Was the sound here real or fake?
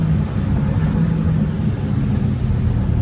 real